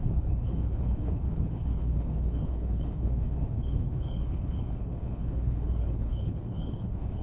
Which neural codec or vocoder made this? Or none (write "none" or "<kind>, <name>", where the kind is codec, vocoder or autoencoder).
codec, HILCodec